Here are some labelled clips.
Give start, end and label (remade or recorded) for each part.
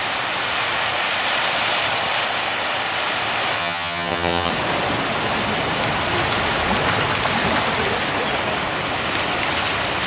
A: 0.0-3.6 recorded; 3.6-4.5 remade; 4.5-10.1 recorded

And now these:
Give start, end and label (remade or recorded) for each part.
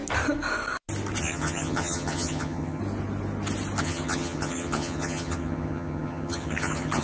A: 0.0-1.2 recorded; 1.2-2.8 remade; 2.8-3.8 recorded; 3.8-7.0 remade